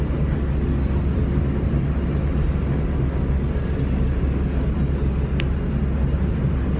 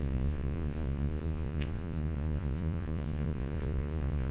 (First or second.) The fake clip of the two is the second